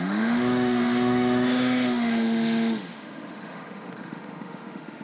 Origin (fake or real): fake